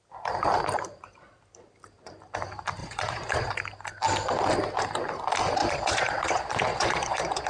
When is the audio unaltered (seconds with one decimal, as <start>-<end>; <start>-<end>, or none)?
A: 0.0-2.8; 3.5-5.6